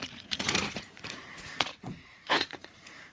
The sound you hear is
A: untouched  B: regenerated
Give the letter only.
B